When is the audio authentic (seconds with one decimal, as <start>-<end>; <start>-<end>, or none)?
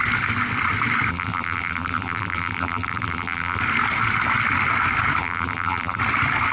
0.0-1.1; 3.6-5.2; 6.0-6.5